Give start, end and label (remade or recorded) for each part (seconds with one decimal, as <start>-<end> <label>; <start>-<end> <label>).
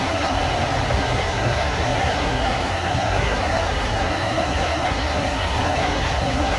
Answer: 0.0-0.4 remade; 0.4-0.9 recorded; 0.9-6.6 remade